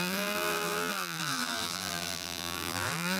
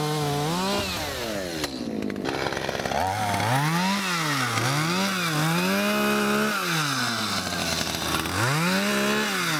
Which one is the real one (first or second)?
second